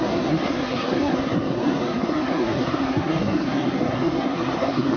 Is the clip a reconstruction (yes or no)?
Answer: yes